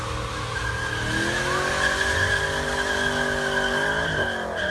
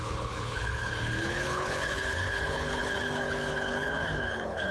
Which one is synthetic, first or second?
second